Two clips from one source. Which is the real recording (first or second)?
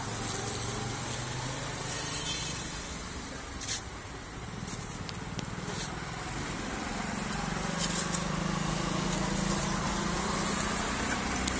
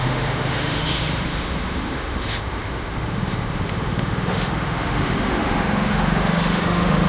first